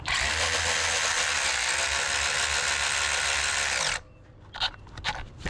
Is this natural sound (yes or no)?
yes